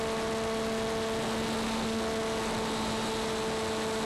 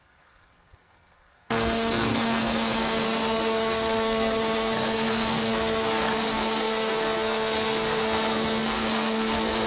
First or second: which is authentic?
first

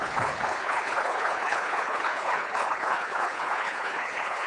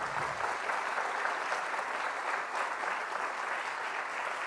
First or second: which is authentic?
second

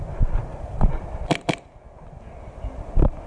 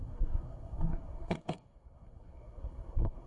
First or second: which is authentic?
first